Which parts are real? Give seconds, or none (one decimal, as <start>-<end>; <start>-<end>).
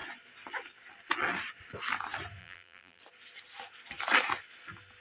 0.0-2.4; 3.0-5.0